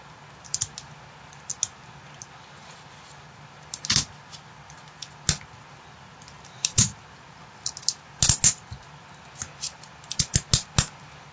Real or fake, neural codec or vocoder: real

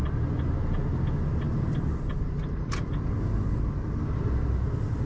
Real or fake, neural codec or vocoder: real